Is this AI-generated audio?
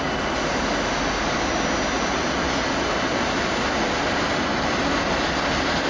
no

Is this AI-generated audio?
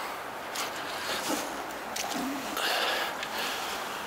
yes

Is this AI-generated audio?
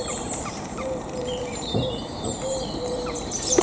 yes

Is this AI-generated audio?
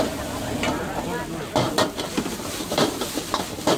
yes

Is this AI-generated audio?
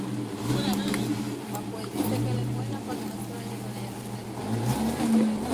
no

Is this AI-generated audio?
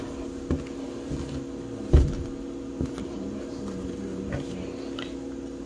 no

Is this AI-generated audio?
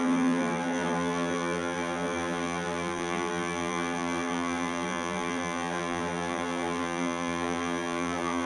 yes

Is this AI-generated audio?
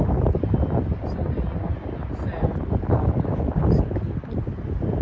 no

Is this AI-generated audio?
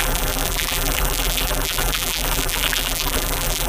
yes